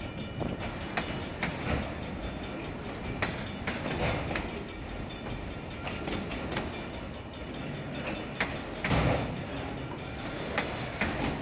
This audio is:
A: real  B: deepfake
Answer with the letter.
A